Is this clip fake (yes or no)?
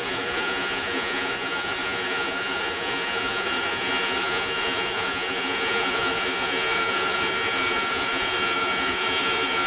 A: yes